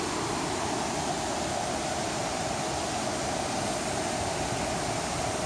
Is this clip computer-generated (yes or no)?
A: yes